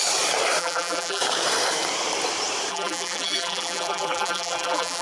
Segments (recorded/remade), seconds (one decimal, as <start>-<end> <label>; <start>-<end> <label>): 0.0-0.6 recorded; 0.6-1.2 remade; 1.2-2.7 recorded; 2.7-5.0 remade